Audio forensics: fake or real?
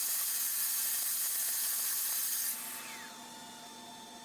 real